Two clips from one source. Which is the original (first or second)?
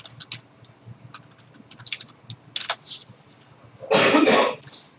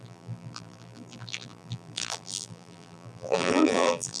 first